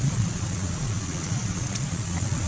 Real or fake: fake